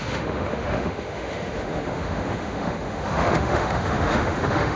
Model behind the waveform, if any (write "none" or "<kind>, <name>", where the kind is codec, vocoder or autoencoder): autoencoder, DAC-VAE